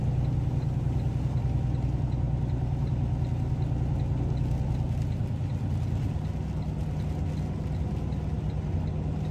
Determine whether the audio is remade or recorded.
recorded